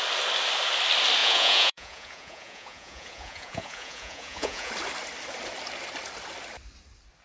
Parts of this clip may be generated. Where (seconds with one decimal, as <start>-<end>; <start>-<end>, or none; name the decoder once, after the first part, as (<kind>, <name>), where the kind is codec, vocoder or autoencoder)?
1.2-4.7 (vocoder, Vocos)